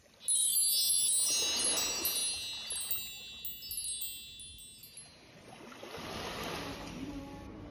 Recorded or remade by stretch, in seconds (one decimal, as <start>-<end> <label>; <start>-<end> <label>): 0.0-7.7 recorded

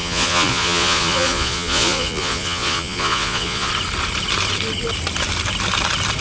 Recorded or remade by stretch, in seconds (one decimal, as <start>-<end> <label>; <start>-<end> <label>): 0.0-3.7 remade; 3.7-6.2 recorded